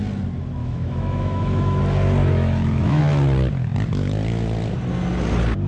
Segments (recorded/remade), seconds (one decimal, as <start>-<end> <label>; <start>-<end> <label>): 0.0-0.6 recorded; 0.6-1.8 remade; 1.8-2.2 recorded; 2.2-3.0 remade; 3.0-5.7 recorded